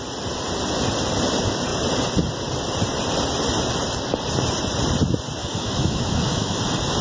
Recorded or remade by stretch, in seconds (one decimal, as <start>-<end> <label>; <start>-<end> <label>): 0.0-5.4 recorded; 5.4-6.6 remade; 6.6-7.0 recorded